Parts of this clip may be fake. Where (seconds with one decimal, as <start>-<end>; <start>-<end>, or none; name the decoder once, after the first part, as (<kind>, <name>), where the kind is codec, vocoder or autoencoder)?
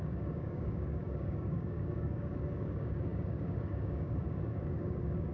0.0-5.3 (codec, DAC)